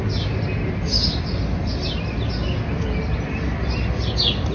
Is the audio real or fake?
real